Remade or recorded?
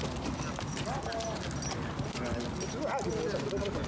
recorded